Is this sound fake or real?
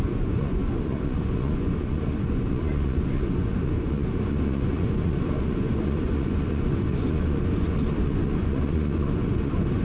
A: fake